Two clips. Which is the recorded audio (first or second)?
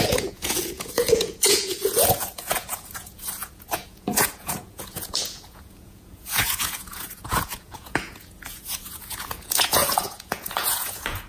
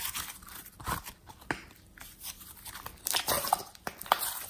second